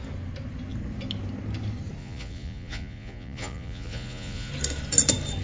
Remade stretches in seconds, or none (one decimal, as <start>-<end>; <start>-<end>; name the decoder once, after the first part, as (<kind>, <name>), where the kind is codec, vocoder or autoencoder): 2.0-4.5 (vocoder, Vocos)